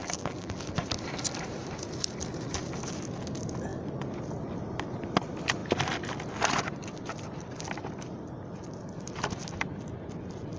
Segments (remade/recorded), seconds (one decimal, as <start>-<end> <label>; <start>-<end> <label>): 0.0-0.6 remade; 0.6-10.6 recorded